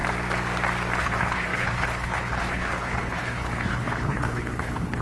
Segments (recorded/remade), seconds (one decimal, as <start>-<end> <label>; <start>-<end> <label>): 0.0-1.0 recorded; 1.0-5.0 remade